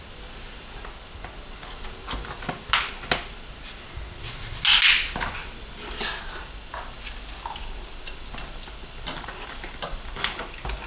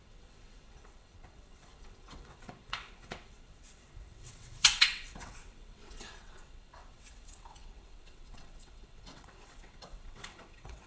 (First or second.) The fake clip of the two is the second